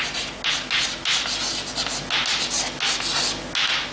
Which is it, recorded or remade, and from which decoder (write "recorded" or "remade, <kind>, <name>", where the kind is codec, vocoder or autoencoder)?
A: recorded